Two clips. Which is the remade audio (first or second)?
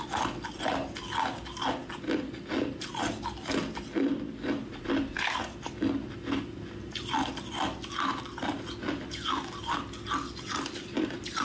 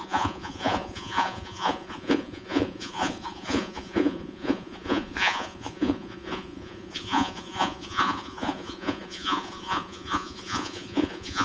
second